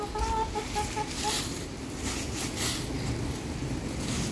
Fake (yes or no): no